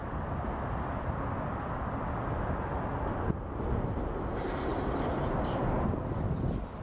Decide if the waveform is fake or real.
real